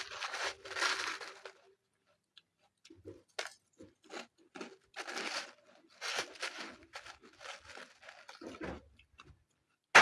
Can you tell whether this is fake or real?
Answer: real